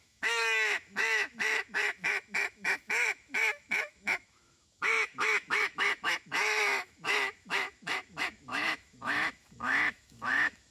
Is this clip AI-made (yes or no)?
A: yes